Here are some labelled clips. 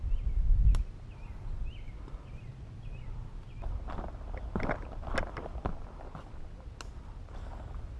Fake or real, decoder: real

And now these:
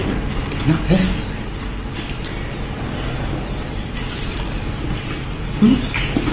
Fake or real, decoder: real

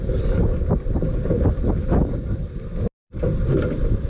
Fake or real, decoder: real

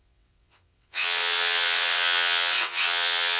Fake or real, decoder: fake, vocoder, WaveNeXt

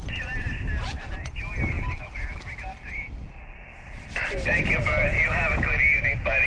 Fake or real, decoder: real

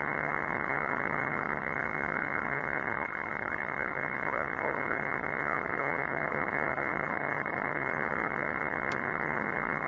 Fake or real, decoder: fake, vocoder, HiFi-GAN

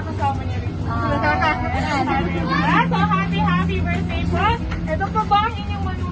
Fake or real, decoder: real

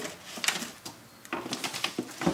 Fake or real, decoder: real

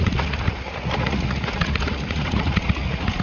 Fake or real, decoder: fake, vocoder, Vocos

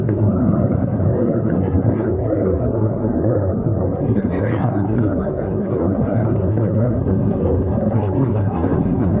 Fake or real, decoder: fake, codec, SNAC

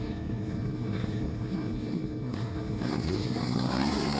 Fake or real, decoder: fake, codec, SNAC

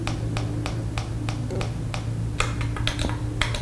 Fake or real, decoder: real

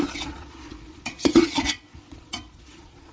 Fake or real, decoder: fake, vocoder, Vocos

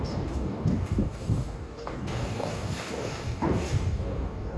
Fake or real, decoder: fake, codec, DAC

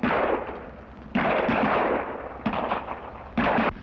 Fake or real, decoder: real